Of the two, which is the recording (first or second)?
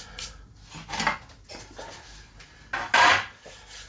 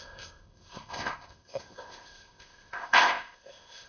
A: first